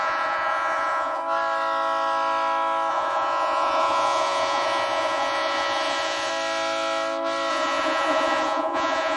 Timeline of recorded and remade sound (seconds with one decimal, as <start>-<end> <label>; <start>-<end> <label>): 0.0-1.2 remade; 1.2-2.9 recorded; 2.9-6.3 remade; 6.3-7.5 recorded; 7.5-9.2 remade